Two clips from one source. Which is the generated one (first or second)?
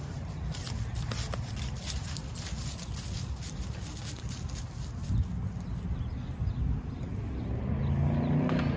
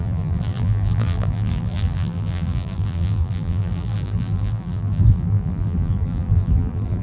second